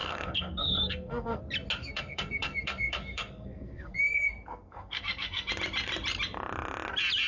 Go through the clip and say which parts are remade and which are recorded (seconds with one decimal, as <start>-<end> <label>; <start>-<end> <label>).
0.0-1.4 remade; 1.4-1.8 recorded; 1.8-5.5 remade; 5.5-7.3 recorded